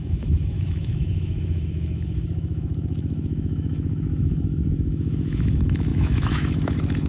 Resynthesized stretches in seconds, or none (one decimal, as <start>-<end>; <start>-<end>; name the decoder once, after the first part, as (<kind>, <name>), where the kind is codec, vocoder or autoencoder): 0.0-7.1 (autoencoder, DAC-VAE)